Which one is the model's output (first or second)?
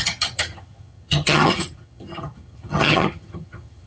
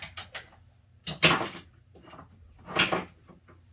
first